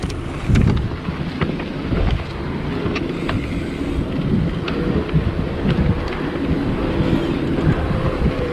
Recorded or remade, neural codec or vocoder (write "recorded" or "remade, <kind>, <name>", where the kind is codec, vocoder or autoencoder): recorded